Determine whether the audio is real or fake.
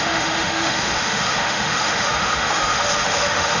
fake